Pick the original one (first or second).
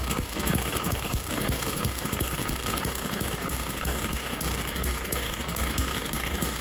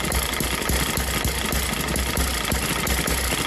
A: second